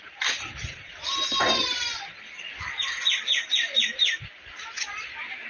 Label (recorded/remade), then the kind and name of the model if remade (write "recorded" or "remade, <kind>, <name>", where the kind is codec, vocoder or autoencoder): recorded